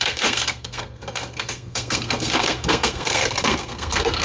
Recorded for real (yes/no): no